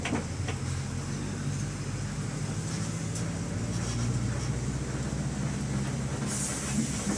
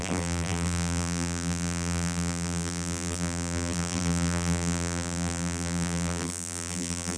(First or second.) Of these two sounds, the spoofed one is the second